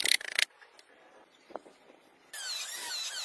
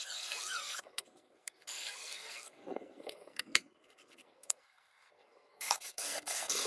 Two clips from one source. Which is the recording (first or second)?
first